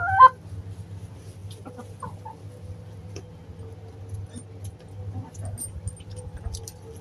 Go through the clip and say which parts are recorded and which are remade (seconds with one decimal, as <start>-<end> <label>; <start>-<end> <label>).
0.0-7.0 recorded